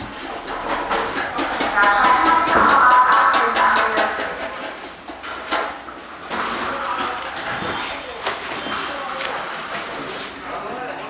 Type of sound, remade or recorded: recorded